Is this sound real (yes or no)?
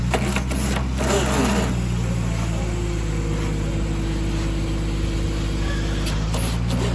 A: yes